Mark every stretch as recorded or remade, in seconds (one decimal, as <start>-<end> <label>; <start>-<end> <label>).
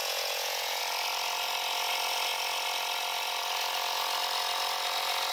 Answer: 0.0-0.8 remade; 0.8-5.3 recorded